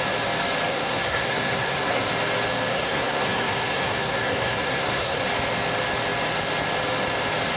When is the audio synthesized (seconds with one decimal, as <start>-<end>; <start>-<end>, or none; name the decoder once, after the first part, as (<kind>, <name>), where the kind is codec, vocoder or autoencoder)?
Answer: 0.7-2.1 (codec, SNAC); 2.7-5.2